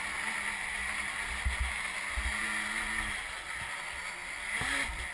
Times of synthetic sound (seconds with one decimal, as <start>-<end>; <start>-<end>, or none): none